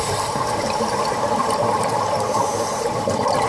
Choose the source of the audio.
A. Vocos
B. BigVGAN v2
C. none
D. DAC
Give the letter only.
B